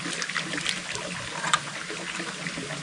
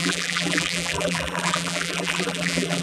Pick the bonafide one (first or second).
first